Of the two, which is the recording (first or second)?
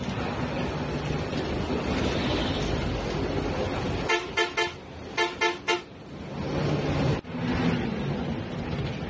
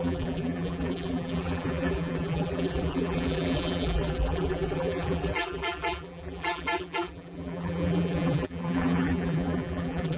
first